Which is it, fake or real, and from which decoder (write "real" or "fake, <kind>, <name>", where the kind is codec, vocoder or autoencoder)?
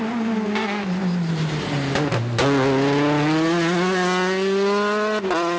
real